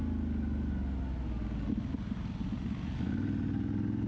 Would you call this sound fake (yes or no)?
no